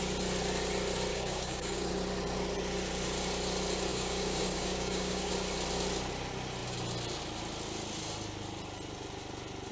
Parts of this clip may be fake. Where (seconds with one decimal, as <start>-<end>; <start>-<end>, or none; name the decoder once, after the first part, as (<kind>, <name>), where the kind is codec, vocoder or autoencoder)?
1.1-1.9 (codec, DAC); 3.9-5.3